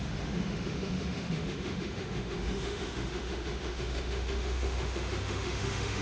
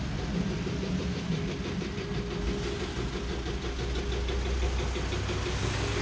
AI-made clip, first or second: first